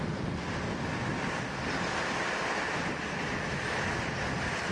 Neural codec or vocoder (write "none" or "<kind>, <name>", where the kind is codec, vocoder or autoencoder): none